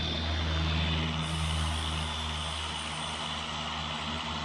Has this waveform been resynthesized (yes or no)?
no